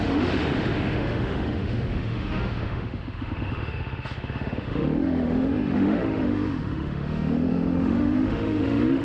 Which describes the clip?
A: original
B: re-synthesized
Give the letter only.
B